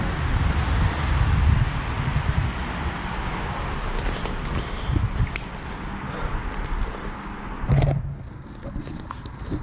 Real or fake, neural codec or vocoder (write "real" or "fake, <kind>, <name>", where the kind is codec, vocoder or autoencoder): real